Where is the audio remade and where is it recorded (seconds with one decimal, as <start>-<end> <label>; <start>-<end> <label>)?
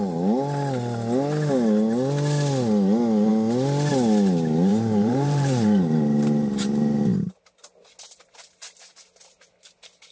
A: 0.0-4.7 recorded; 4.7-7.0 remade; 7.0-10.1 recorded